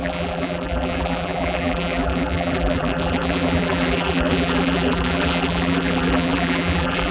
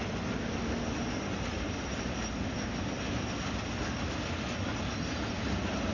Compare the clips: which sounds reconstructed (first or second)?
first